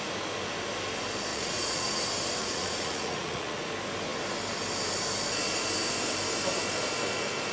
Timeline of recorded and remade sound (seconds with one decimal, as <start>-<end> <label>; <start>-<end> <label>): 0.0-1.3 recorded; 1.3-2.0 remade; 2.0-2.4 recorded; 2.4-3.6 remade; 3.6-7.5 recorded